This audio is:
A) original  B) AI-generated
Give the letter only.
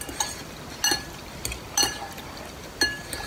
A